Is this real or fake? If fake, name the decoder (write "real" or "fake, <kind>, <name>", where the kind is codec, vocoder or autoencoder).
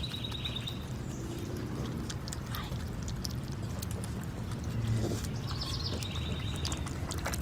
real